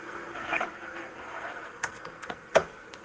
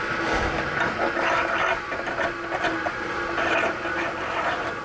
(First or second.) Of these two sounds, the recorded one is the second